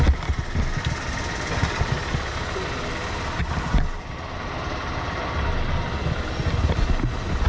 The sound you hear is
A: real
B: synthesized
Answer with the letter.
A